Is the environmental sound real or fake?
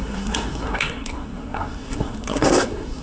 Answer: fake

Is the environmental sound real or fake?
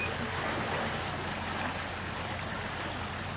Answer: real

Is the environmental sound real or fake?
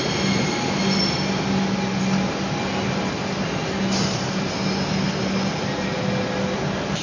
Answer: real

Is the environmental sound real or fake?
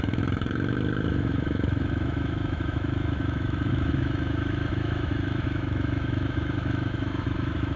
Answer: fake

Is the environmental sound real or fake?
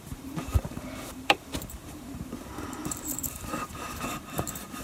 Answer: fake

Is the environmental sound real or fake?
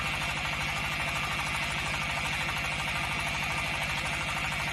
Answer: real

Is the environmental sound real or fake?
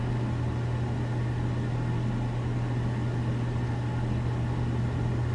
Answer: real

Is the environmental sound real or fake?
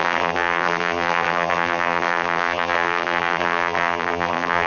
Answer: fake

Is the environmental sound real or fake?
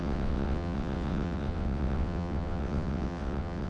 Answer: fake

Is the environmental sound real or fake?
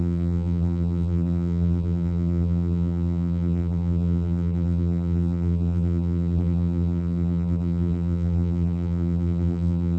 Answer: fake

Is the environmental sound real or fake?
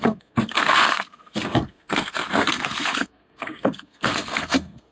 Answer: fake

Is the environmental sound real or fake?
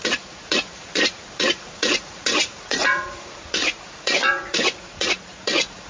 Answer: fake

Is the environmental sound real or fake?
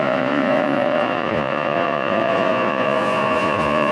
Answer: fake